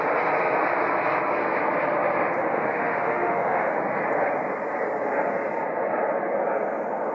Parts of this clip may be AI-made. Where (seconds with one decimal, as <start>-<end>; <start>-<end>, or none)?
2.4-3.8